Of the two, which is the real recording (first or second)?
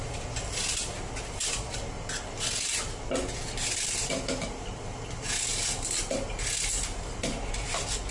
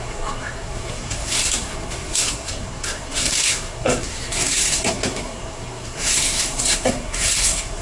first